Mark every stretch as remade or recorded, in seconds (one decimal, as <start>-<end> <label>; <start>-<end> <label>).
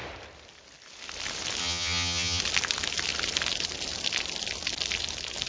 0.0-1.6 recorded; 1.6-2.4 remade; 2.4-5.5 recorded